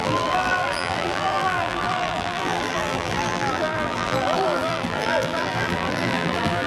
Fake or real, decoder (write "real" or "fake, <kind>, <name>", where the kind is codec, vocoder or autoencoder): fake, vocoder, BigVGAN v2